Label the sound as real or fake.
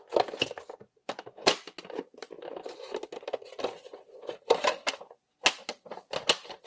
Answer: real